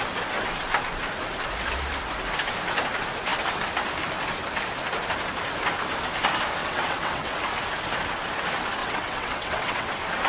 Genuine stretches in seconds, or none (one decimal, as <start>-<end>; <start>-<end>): 0.0-6.6; 7.3-8.8; 9.9-10.3